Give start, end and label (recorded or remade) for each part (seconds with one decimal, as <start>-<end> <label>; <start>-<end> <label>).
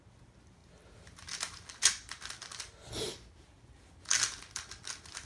0.0-5.3 recorded